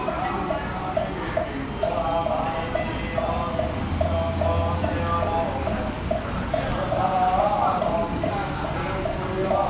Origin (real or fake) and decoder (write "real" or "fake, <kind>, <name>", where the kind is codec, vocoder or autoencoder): real